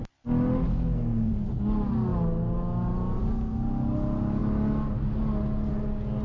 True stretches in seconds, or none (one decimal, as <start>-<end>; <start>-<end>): 0.0-0.7; 1.3-6.2